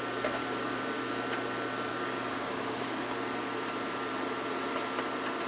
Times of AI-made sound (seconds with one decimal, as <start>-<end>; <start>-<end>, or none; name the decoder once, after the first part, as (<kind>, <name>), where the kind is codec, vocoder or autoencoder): 0.4-1.1 (codec, DAC); 1.9-3.0